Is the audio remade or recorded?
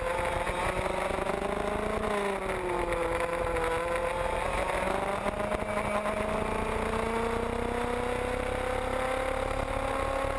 recorded